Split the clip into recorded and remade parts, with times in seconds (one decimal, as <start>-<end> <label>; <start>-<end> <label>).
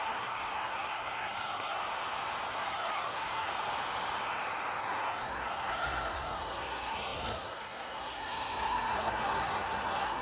0.0-1.8 remade; 1.8-2.5 recorded; 2.5-3.5 remade; 3.5-4.8 recorded; 4.8-10.2 remade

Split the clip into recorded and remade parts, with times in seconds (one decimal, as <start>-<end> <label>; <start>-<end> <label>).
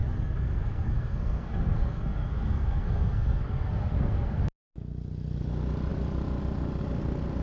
0.0-4.4 remade; 4.4-7.4 recorded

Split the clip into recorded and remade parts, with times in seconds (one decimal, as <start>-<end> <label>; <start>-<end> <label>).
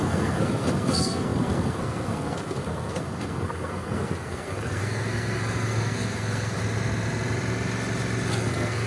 0.0-6.6 remade; 6.6-8.3 recorded; 8.3-8.9 remade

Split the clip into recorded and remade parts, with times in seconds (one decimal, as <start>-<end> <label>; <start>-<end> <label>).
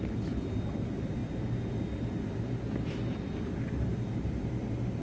0.0-5.0 recorded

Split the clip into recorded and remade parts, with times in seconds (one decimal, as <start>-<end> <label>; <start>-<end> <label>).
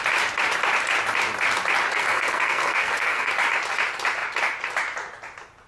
0.0-1.9 recorded; 1.9-3.3 remade; 3.3-5.7 recorded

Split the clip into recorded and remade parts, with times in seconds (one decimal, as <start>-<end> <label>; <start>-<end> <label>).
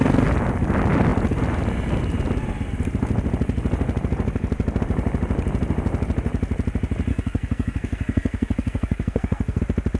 0.0-7.1 recorded; 7.1-9.6 remade; 9.6-10.0 recorded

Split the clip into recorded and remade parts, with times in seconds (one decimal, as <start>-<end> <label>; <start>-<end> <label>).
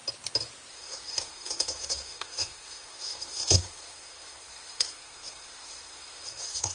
0.0-0.7 recorded; 0.7-6.7 remade